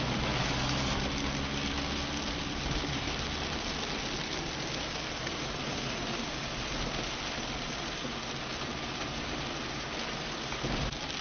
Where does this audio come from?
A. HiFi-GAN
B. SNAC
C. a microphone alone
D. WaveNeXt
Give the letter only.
C